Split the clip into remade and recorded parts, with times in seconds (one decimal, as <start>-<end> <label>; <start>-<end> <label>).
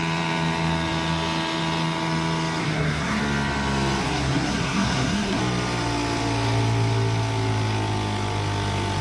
0.0-2.6 recorded; 2.6-3.2 remade; 3.2-4.0 recorded; 4.0-5.4 remade; 5.4-9.0 recorded